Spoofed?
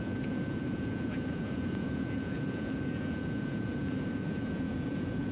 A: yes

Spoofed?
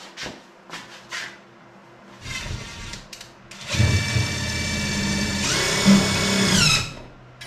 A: no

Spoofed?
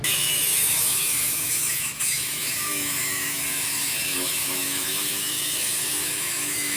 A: yes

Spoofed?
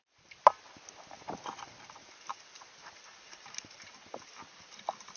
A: no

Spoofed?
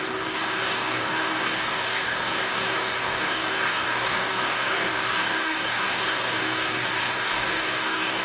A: yes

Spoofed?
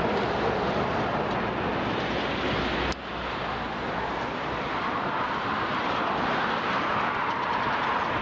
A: no